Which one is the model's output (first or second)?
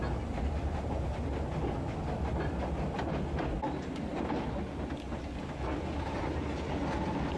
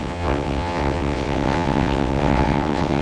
second